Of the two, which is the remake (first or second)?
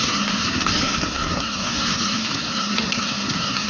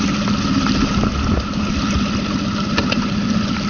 first